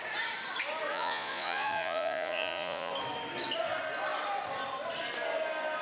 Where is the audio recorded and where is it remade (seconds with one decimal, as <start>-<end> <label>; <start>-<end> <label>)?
0.0-0.9 recorded; 0.9-2.9 remade; 2.9-5.8 recorded